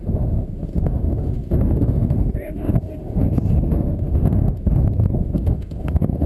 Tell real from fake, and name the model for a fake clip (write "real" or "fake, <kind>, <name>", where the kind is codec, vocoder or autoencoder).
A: fake, autoencoder, DAC-VAE